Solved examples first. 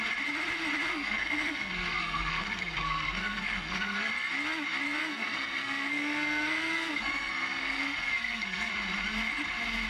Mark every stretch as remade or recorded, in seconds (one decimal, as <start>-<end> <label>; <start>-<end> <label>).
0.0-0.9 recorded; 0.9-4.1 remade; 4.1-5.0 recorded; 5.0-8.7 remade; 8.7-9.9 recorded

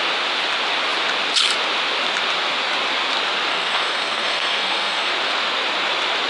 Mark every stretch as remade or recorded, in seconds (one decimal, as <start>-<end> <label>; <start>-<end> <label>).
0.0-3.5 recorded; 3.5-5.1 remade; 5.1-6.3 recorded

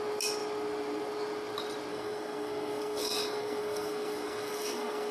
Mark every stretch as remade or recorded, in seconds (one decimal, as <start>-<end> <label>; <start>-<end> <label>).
0.0-1.9 recorded; 1.9-5.1 remade

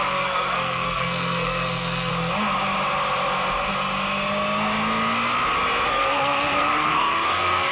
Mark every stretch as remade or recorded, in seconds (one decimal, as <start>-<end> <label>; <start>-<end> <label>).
0.0-2.1 remade; 2.1-5.9 recorded; 5.9-7.7 remade